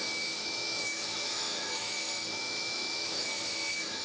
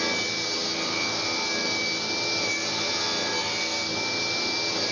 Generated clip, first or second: first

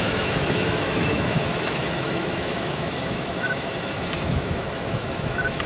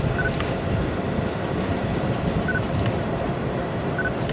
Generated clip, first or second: first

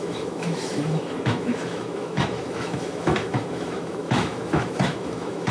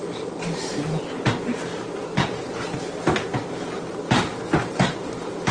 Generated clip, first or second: first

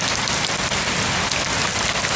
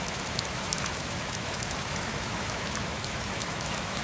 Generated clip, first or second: second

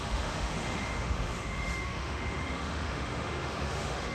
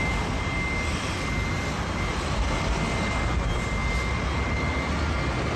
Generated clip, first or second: first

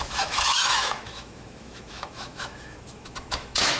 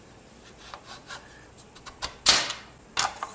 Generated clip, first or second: first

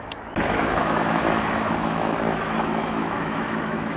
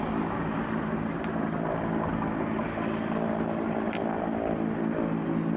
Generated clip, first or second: first